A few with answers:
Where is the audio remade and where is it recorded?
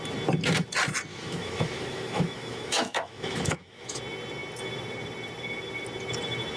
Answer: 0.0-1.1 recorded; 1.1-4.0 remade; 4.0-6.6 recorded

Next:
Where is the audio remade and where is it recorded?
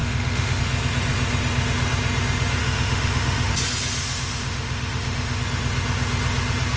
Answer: 0.0-0.6 remade; 0.6-2.6 recorded; 2.6-3.5 remade; 3.5-4.0 recorded; 4.0-5.4 remade; 5.4-6.8 recorded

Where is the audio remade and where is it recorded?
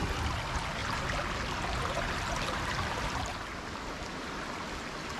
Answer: 0.0-5.2 recorded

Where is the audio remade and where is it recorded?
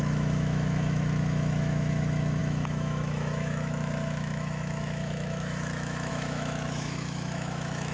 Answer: 0.0-7.9 remade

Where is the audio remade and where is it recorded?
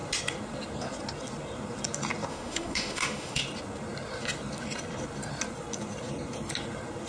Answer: 0.0-2.3 recorded; 2.3-3.4 remade; 3.4-7.1 recorded